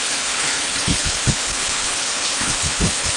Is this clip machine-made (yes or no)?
yes